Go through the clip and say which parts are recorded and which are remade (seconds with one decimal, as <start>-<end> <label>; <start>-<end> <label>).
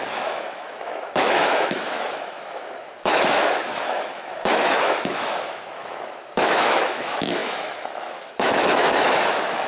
0.0-9.7 remade